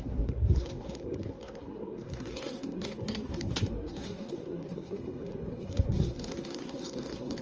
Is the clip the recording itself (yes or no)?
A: no